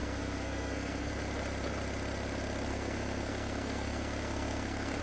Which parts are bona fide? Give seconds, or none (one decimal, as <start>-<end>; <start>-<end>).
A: 1.1-2.7